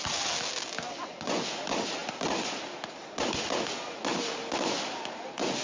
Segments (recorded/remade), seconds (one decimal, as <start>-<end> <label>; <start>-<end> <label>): 0.0-1.0 recorded; 1.0-1.6 remade; 1.6-5.6 recorded